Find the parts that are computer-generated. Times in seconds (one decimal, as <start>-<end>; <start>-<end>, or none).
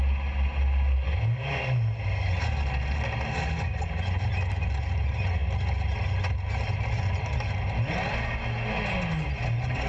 none